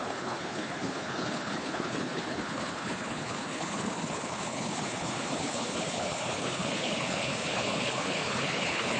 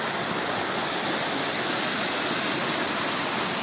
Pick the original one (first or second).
second